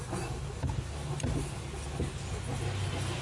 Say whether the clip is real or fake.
real